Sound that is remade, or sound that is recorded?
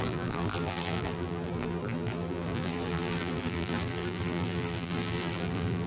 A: remade